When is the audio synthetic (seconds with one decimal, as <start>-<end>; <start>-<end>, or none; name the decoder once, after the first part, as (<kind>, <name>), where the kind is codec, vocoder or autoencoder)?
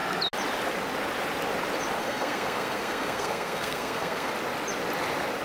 2.0-4.3 (codec, SNAC)